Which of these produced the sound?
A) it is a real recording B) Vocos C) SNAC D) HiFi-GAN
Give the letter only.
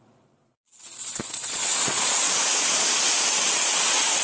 B